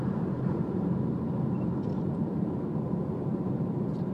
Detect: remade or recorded remade